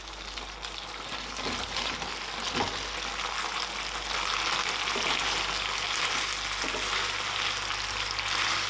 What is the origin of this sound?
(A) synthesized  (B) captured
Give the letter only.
B